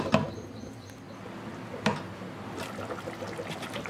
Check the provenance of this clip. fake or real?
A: real